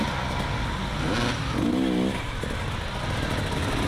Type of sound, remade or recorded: recorded